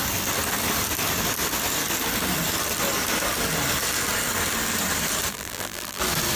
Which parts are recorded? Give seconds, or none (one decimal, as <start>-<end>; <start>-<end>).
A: 0.0-5.3; 6.0-6.4